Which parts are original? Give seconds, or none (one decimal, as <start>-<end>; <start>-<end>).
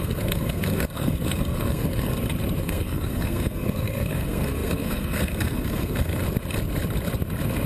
2.1-2.6; 6.2-7.7